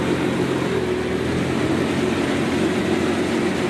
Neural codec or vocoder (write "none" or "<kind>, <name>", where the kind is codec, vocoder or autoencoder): none